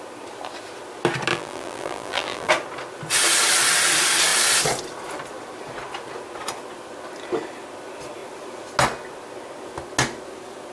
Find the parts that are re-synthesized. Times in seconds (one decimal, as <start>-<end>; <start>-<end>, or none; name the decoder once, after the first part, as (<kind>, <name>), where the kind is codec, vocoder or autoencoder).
1.3-2.5 (vocoder, BigVGAN v2)